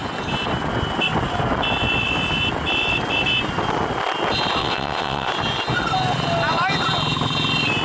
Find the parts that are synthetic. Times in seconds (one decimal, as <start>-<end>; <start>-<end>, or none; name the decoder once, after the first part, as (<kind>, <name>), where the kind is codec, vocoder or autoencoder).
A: 4.6-5.3 (vocoder, WaveNeXt)